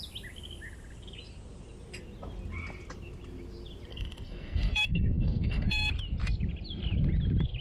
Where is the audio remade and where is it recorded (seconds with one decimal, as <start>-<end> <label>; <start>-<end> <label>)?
0.0-3.9 recorded; 3.9-5.9 remade; 5.9-7.6 recorded